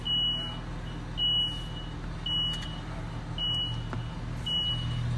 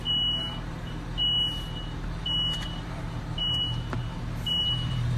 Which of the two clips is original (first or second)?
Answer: first